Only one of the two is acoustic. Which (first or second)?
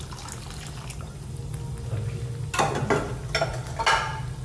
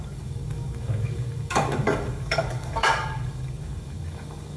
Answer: first